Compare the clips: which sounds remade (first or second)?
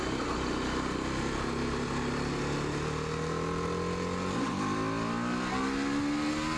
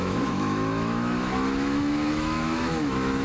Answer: second